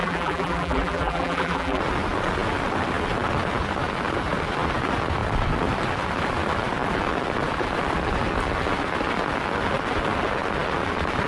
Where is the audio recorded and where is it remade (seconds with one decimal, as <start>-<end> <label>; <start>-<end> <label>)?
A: 0.0-1.8 remade; 1.8-11.3 recorded